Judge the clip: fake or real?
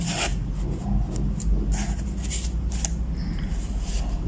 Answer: real